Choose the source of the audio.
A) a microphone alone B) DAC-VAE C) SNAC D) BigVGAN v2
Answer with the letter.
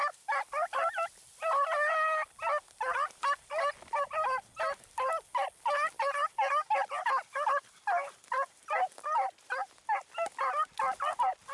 A